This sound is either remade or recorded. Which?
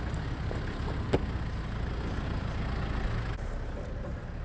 recorded